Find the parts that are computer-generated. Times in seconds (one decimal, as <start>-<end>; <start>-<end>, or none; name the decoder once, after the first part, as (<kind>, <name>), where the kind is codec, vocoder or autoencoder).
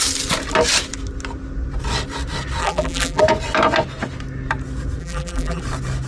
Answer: 2.6-3.2 (vocoder, BigVGAN v2); 5.0-5.6